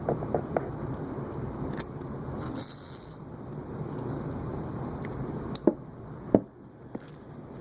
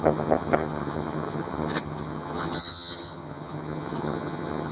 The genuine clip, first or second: first